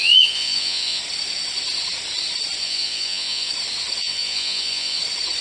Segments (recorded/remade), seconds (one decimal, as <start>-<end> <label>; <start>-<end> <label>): 0.0-1.0 remade; 1.0-2.6 recorded; 2.6-3.5 remade; 3.5-4.0 recorded; 4.0-5.0 remade; 5.0-5.4 recorded